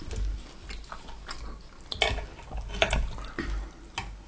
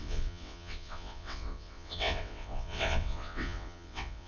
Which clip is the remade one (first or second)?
second